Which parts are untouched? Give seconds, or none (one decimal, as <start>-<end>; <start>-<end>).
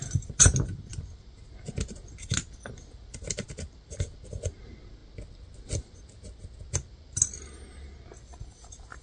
0.0-9.0